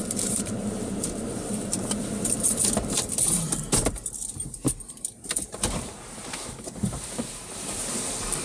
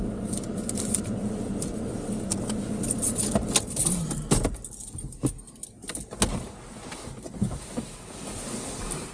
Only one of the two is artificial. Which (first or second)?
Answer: first